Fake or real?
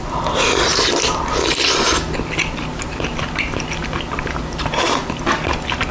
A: real